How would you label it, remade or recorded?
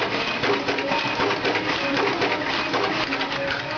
recorded